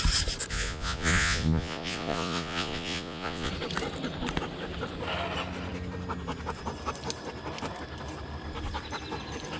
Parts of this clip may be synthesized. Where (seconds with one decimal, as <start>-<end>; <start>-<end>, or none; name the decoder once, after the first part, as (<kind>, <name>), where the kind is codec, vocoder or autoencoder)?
0.5-3.5 (vocoder, Vocos)